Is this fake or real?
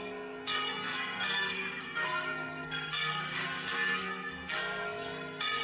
fake